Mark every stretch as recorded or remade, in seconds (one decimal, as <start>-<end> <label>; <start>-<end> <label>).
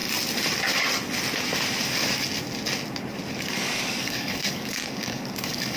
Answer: 0.0-3.5 recorded; 3.5-5.8 remade